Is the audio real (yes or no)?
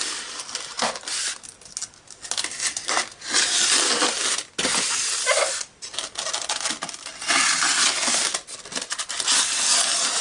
yes